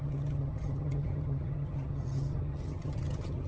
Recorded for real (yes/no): no